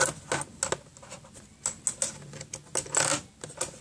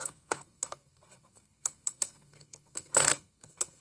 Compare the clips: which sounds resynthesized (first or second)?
second